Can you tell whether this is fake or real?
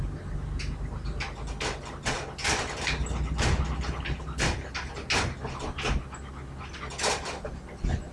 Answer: real